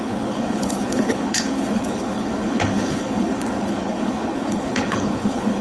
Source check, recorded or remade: remade